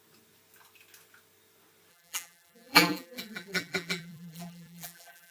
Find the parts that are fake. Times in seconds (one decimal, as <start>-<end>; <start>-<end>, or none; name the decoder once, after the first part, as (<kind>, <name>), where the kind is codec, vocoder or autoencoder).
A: 1.9-5.3 (vocoder, BigVGAN v2)